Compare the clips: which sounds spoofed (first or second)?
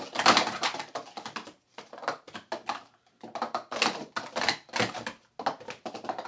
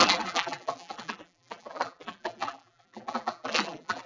second